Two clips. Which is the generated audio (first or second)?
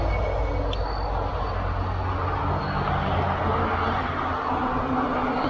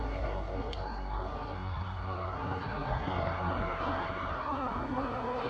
second